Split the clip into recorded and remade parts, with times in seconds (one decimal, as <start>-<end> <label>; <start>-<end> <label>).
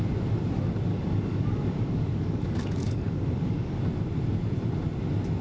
0.0-0.9 recorded; 0.9-3.8 remade; 3.8-5.4 recorded